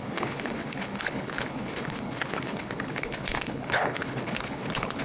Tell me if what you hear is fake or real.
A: fake